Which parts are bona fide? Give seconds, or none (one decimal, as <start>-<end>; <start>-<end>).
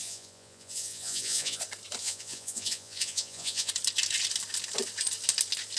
1.6-2.0; 3.7-5.8